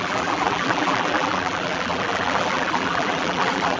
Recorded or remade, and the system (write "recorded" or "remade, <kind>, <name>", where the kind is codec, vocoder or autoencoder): remade, vocoder, BigVGAN v2